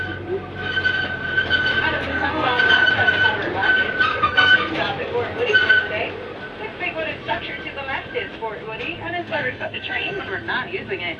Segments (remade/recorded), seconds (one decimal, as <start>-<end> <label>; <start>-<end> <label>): 0.0-2.1 recorded; 2.1-2.6 remade; 2.6-4.1 recorded; 4.1-4.7 remade; 4.7-9.2 recorded; 9.2-10.2 remade; 10.2-11.2 recorded